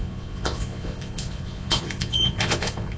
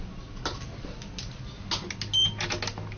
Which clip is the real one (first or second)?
second